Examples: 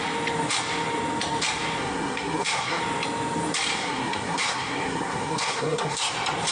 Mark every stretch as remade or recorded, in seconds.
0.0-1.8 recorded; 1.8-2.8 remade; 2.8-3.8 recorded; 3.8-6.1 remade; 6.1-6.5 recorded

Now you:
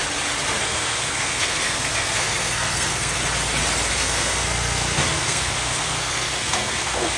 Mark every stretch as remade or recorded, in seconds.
0.0-0.6 recorded; 0.6-3.2 remade; 3.2-3.9 recorded; 3.9-7.2 remade

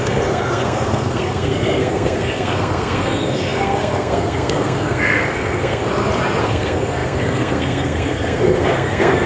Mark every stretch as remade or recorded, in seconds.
0.0-5.8 remade; 5.8-6.4 recorded; 6.4-9.3 remade

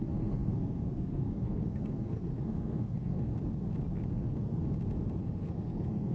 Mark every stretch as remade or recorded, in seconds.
0.0-3.3 remade; 3.3-4.1 recorded; 4.1-4.6 remade; 4.6-5.2 recorded; 5.2-6.1 remade

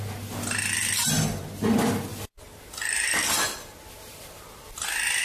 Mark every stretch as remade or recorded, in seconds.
0.0-5.2 recorded

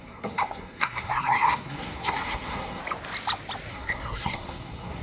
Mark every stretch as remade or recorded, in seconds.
0.0-2.8 remade; 2.8-3.7 recorded; 3.7-5.0 remade

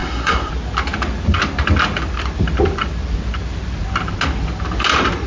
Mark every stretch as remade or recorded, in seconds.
0.0-0.5 remade; 0.5-5.3 recorded